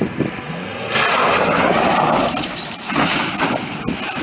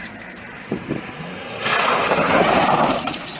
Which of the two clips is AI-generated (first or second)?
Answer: second